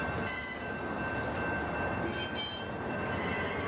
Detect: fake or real real